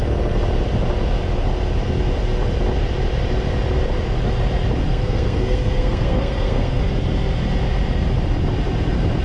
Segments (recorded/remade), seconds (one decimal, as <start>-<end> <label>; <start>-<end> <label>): 0.0-4.9 recorded; 4.9-6.8 remade; 6.8-9.2 recorded